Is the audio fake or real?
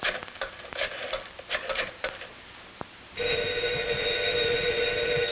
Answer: real